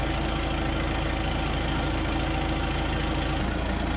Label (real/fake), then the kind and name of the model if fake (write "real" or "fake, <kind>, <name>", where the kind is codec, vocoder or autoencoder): real